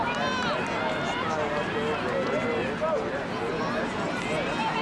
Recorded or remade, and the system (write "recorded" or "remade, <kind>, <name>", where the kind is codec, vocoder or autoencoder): recorded